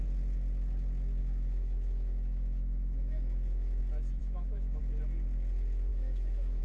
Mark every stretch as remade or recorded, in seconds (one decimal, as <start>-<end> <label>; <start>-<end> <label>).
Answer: 0.0-1.2 recorded; 1.2-3.8 remade; 3.8-4.2 recorded; 4.2-4.8 remade; 4.8-5.9 recorded; 5.9-6.6 remade